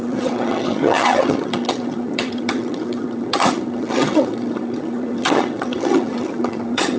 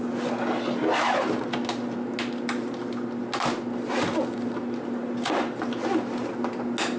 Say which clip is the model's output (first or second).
first